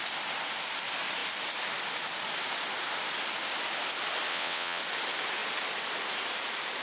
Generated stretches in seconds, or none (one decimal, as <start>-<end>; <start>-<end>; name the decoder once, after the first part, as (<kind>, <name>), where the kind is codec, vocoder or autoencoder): 4.3-4.8 (vocoder, WaveNeXt)

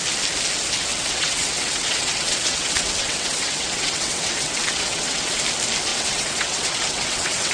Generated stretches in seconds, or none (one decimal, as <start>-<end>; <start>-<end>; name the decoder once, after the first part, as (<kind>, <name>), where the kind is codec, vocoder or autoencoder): 0.9-5.4 (vocoder, WaveNeXt); 5.9-7.5

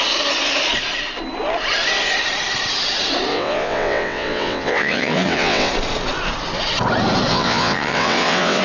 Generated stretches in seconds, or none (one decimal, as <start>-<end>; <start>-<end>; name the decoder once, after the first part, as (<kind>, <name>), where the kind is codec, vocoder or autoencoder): 3.3-5.7 (vocoder, WaveNeXt); 7.3-8.6